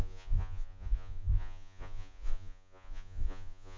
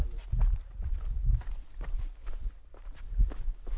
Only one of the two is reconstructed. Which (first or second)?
first